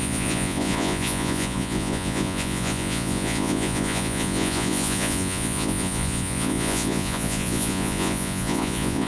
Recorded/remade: remade